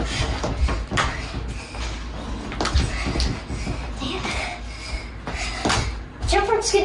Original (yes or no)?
yes